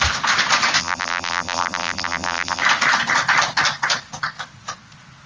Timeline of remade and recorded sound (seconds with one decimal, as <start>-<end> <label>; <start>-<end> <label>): 0.0-0.8 recorded; 0.8-2.6 remade; 2.6-5.3 recorded